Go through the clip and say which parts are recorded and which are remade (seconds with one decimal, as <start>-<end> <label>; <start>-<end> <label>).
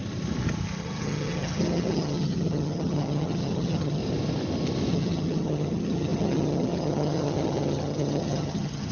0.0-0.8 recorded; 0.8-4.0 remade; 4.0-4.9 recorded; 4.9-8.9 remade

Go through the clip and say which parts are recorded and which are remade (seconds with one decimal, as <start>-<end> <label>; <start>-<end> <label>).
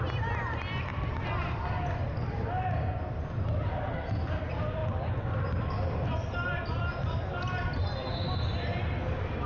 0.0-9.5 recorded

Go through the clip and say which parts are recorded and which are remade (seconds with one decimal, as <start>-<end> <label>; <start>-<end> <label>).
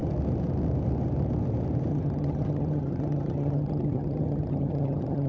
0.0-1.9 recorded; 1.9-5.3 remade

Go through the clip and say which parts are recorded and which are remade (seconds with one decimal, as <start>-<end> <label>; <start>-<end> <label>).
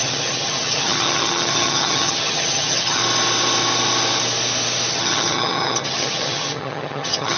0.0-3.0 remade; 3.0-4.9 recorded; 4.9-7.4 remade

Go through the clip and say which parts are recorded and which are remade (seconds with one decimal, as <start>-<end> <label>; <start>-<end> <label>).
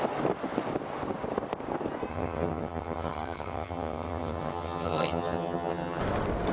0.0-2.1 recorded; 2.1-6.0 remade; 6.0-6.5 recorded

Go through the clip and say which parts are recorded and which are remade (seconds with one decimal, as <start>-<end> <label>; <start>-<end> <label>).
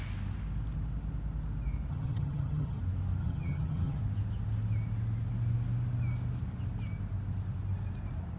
0.0-1.9 recorded; 1.9-2.8 remade; 2.8-3.2 recorded; 3.2-4.0 remade; 4.0-8.4 recorded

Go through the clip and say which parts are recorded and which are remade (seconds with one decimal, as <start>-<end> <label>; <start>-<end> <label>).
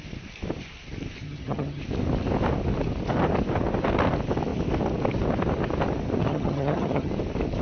0.0-1.2 recorded; 1.2-1.8 remade; 1.8-6.3 recorded; 6.3-7.1 remade; 7.1-7.6 recorded